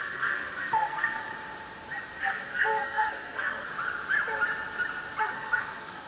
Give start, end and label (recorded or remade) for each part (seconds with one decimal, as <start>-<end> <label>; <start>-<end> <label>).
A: 0.0-1.3 remade; 1.3-2.2 recorded; 2.2-3.7 remade; 3.7-5.2 recorded; 5.2-6.1 remade